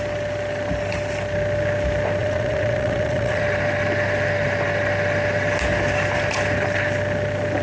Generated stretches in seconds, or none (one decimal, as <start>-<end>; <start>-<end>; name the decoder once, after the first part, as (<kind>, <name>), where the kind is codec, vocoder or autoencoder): 2.2-3.4 (vocoder, WaveNeXt)